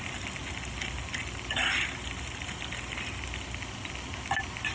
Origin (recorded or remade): recorded